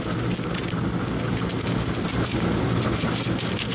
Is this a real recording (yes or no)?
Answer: yes